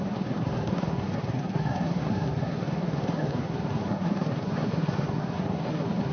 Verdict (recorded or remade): remade